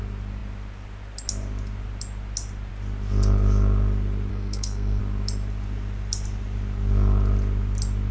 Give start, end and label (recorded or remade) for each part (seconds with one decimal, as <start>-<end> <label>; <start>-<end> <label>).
0.0-4.3 recorded; 4.3-5.0 remade; 5.0-8.1 recorded